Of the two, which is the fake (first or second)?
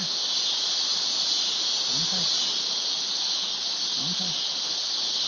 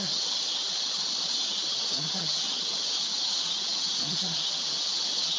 second